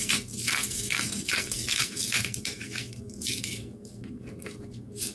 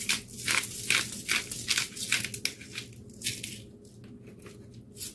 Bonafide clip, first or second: second